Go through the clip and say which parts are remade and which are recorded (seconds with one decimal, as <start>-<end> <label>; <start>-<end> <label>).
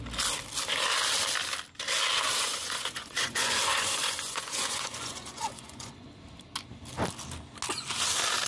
0.0-2.4 recorded; 2.4-6.1 remade; 6.1-8.5 recorded